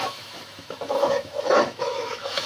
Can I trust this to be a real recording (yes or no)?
no